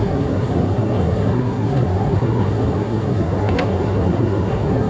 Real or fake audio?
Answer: fake